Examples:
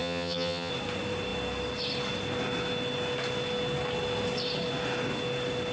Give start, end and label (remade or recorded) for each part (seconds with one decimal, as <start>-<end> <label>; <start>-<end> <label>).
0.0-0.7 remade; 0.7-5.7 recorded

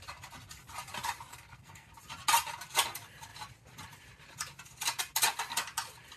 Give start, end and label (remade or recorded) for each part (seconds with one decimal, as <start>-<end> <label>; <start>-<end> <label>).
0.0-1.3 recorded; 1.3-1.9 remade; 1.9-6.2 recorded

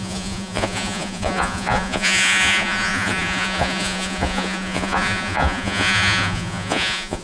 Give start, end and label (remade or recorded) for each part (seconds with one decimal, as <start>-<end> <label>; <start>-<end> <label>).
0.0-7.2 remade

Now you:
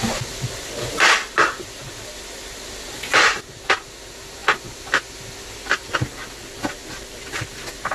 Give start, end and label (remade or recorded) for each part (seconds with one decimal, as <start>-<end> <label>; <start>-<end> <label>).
0.0-7.9 recorded

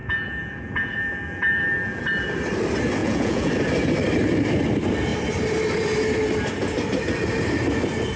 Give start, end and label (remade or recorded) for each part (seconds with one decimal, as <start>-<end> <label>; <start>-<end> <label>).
0.0-2.0 remade; 2.0-3.0 recorded; 3.0-3.5 remade; 3.5-8.2 recorded

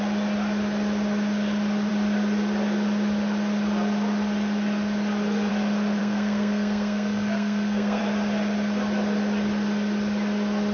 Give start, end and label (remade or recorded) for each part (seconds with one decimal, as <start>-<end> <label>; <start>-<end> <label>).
0.0-6.0 recorded; 6.0-8.0 remade; 8.0-10.7 recorded

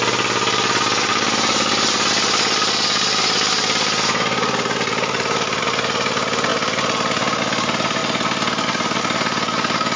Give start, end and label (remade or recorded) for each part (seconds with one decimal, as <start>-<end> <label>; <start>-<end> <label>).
0.0-10.0 recorded

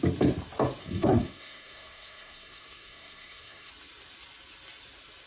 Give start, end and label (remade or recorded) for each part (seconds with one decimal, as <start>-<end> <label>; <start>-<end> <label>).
0.0-0.8 recorded; 0.8-3.7 remade; 3.7-5.3 recorded